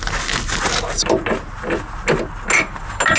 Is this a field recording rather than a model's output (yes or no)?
yes